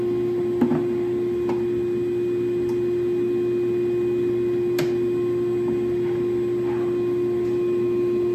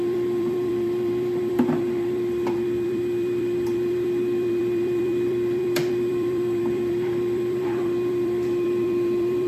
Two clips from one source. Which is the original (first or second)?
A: first